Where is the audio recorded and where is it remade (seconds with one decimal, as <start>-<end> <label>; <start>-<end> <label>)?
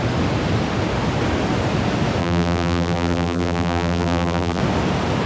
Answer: 0.0-2.2 recorded; 2.2-4.6 remade; 4.6-5.3 recorded